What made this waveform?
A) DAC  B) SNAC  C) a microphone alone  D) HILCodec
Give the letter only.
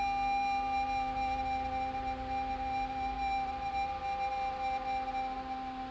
C